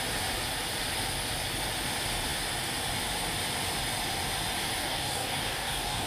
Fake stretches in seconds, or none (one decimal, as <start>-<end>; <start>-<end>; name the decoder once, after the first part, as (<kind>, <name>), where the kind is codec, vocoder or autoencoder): 4.8-6.1 (codec, DAC)